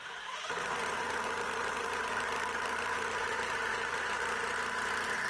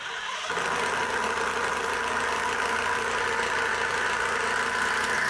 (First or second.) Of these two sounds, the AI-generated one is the first